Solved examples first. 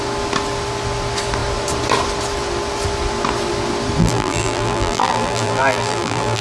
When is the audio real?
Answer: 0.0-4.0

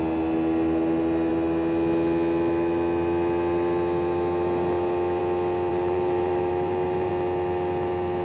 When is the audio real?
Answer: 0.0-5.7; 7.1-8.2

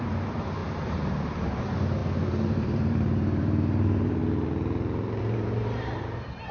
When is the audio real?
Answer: 2.0-2.5; 4.2-5.2

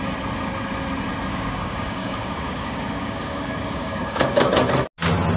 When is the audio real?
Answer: 0.0-1.3; 4.5-5.4

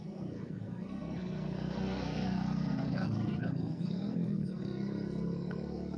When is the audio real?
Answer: none